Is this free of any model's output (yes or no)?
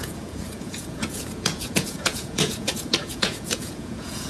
no